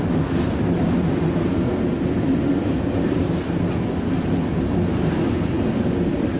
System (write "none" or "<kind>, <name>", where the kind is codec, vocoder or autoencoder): none